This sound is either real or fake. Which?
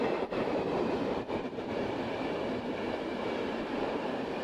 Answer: fake